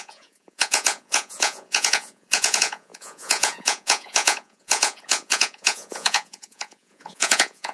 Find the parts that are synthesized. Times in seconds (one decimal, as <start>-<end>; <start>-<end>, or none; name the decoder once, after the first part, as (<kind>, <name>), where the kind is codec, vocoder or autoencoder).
0.0-7.7 (vocoder, Vocos)